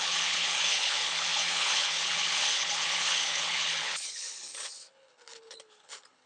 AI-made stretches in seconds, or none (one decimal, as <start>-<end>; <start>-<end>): 0.0-6.3